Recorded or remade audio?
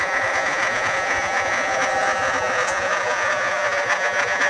remade